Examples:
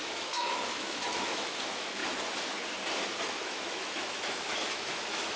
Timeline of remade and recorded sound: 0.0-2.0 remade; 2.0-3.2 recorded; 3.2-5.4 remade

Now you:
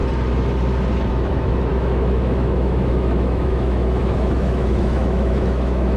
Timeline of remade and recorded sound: 0.0-1.1 recorded; 1.1-6.0 remade

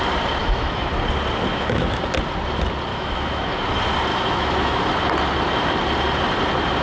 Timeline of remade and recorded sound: 0.0-0.4 recorded; 0.4-0.9 remade; 0.9-1.5 recorded; 1.5-2.0 remade; 2.0-2.9 recorded; 2.9-3.5 remade; 3.5-4.1 recorded; 4.1-4.8 remade; 4.8-6.8 recorded

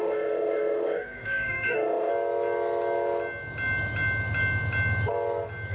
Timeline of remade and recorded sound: 0.0-2.1 remade; 2.1-5.7 recorded